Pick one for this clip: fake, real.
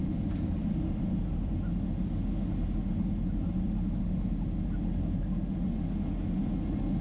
real